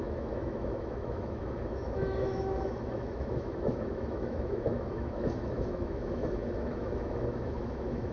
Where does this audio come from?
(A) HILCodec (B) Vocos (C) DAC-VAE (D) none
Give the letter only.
C